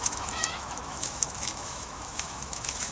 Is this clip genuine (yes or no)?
no